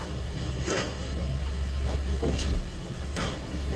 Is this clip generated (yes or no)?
yes